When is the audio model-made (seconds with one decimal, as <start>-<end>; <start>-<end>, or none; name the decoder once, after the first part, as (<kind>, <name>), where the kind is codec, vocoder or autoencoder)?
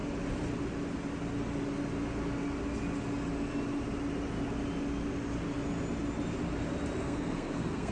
7.0-7.9 (codec, SNAC)